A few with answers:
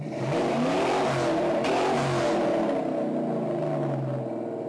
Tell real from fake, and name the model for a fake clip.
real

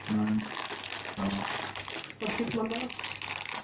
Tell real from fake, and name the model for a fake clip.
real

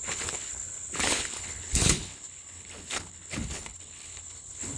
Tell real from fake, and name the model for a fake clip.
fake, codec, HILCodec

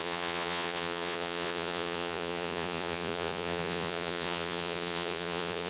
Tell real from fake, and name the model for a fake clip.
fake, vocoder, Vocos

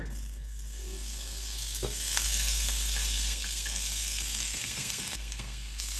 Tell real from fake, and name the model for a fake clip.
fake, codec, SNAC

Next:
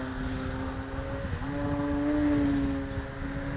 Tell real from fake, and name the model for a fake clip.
real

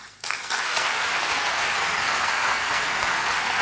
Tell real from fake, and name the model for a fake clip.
fake, codec, SNAC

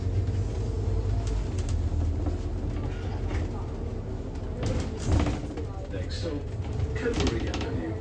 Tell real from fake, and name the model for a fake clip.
real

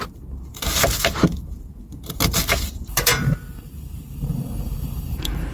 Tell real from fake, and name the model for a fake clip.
fake, vocoder, BigVGAN v2